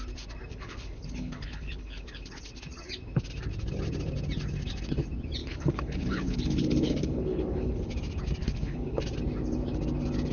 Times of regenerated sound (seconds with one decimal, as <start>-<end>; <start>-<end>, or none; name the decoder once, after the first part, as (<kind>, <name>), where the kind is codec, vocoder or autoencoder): 0.5-2.4 (codec, HILCodec); 5.4-7.9; 8.4-9.0